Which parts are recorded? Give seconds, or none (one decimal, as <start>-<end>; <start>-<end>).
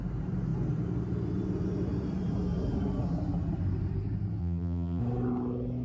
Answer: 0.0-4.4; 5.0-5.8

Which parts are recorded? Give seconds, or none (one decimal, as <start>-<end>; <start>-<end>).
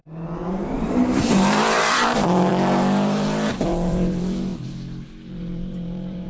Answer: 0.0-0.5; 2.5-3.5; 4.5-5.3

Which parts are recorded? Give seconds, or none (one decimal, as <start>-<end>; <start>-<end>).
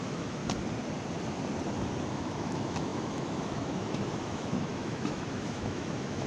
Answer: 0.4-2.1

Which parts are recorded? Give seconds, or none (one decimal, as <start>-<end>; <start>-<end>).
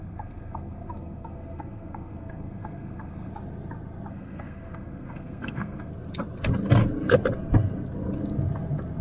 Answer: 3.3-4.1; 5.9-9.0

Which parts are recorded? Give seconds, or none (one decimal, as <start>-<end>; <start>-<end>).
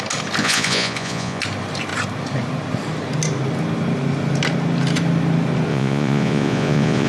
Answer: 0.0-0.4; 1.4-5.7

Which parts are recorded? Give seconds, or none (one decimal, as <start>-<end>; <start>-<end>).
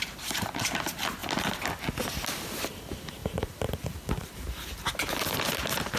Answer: 1.2-2.7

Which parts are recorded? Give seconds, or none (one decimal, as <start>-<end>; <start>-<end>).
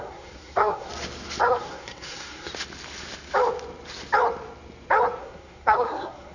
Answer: 0.9-1.4; 2.5-5.2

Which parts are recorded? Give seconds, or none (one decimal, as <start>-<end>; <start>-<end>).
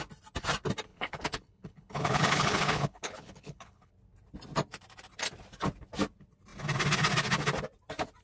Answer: 0.0-0.9; 3.9-8.2